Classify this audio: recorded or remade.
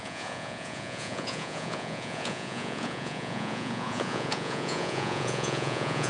remade